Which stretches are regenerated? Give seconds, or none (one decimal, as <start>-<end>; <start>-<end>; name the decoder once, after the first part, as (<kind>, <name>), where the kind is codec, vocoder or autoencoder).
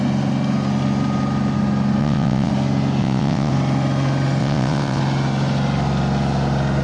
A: 2.0-2.5 (vocoder, WaveNeXt); 3.0-3.5; 4.4-5.0